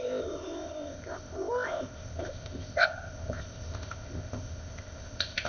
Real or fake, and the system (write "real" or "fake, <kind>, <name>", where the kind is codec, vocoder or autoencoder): fake, codec, ZipCodec